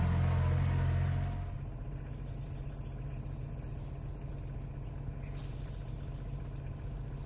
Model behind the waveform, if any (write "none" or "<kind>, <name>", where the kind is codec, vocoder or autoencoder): none